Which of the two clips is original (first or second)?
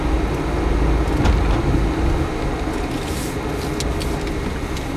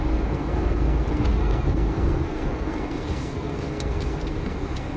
first